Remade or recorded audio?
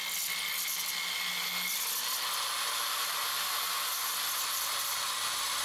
recorded